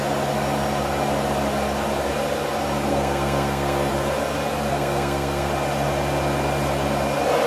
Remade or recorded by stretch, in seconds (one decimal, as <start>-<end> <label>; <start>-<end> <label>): 0.0-2.9 recorded; 2.9-3.9 remade; 3.9-4.7 recorded; 4.7-5.5 remade; 5.5-7.5 recorded